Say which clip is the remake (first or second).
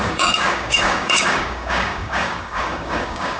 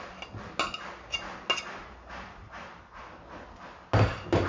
first